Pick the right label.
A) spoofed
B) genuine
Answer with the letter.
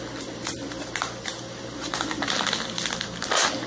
B